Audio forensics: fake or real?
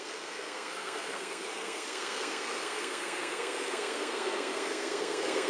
fake